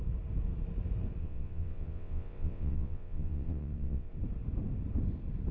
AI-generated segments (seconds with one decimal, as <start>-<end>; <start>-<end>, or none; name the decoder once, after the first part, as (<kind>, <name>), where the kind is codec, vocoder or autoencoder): 1.2-4.1 (vocoder, WaveNeXt)